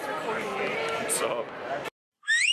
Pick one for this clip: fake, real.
real